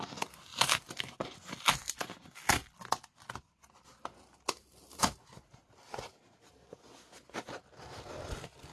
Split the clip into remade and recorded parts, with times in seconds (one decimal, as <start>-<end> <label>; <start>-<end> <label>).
0.0-8.7 recorded